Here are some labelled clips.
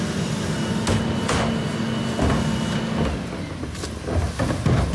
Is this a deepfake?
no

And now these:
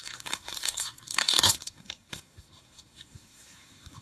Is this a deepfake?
yes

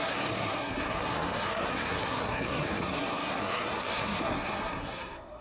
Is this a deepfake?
yes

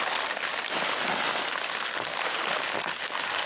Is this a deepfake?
no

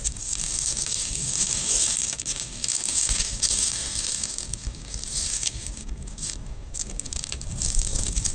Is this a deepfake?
yes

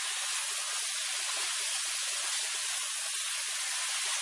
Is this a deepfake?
yes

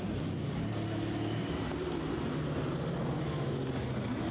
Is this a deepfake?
no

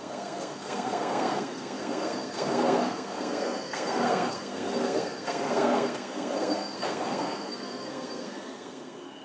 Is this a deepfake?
yes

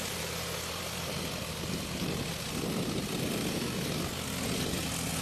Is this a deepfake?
no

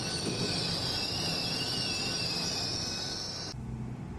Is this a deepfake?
no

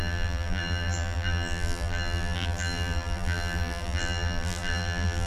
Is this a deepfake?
yes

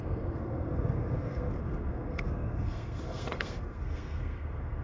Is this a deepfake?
yes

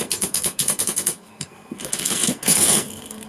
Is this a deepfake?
yes